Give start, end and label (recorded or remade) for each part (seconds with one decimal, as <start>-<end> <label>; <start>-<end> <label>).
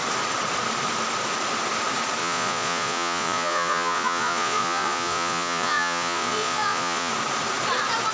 0.0-2.2 recorded; 2.2-7.1 remade; 7.1-8.1 recorded